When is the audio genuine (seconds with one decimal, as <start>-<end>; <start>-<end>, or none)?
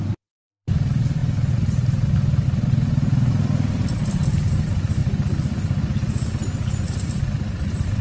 5.0-6.8